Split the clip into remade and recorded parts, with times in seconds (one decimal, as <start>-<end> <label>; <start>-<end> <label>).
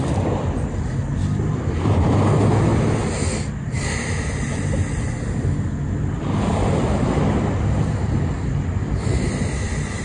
0.0-10.0 recorded